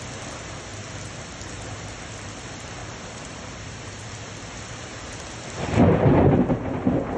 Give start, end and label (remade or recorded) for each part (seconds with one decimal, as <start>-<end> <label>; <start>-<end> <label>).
0.0-2.8 recorded; 2.8-4.1 remade; 4.1-7.2 recorded

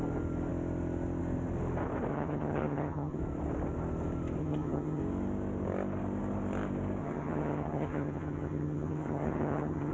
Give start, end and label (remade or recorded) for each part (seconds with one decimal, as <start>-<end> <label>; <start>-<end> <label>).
0.0-2.1 recorded; 2.1-3.2 remade; 3.2-4.4 recorded; 4.4-5.0 remade; 5.0-7.0 recorded; 7.0-9.9 remade

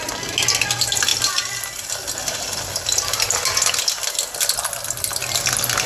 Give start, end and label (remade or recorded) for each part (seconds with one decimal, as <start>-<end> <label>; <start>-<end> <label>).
0.0-5.9 recorded

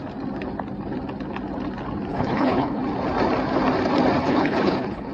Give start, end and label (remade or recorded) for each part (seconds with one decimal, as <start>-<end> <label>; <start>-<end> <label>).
0.0-2.1 recorded; 2.1-2.8 remade; 2.8-4.2 recorded; 4.2-5.1 remade

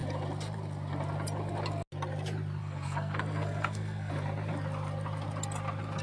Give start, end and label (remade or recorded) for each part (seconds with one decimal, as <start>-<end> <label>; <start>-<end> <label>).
0.0-2.6 recorded; 2.6-4.1 remade; 4.1-6.0 recorded

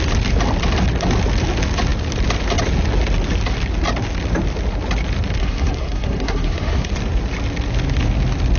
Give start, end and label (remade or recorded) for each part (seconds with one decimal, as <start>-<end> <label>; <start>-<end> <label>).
0.0-5.4 recorded; 5.4-6.9 remade; 6.9-8.6 recorded

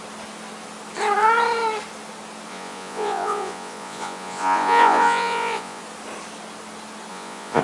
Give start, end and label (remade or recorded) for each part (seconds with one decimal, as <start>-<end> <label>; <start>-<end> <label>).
0.0-2.5 recorded; 2.5-5.8 remade; 5.8-7.1 recorded; 7.1-7.6 remade

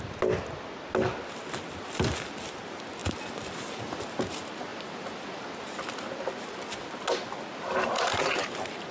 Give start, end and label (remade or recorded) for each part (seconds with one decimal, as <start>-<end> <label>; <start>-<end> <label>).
0.0-8.9 recorded